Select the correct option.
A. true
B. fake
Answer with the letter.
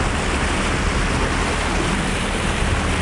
A